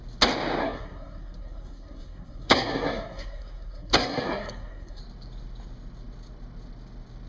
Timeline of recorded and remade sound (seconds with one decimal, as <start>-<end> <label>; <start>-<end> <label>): 0.0-0.6 recorded; 0.6-5.0 remade; 5.0-7.3 recorded